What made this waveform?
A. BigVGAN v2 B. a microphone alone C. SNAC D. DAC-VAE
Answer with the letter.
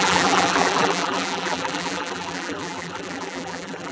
A